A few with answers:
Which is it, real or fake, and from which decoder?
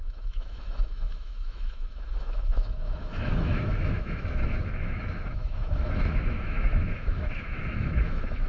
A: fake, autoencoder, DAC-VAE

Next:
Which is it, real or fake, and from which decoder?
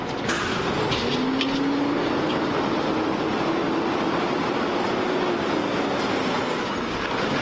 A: real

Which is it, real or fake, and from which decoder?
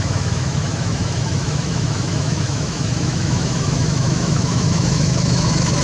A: fake, autoencoder, DAC-VAE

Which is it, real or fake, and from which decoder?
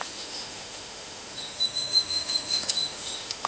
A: fake, autoencoder, DAC-VAE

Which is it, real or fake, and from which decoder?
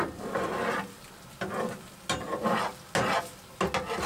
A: real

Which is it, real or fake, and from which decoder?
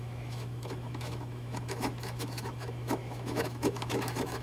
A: fake, autoencoder, DAC-VAE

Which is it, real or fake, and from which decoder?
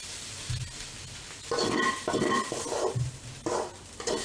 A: real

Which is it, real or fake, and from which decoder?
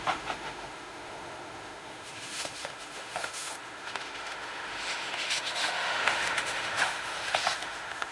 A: fake, autoencoder, DAC-VAE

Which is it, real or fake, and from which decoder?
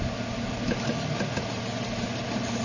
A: real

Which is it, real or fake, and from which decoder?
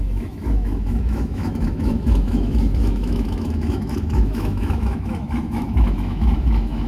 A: fake, autoencoder, DAC-VAE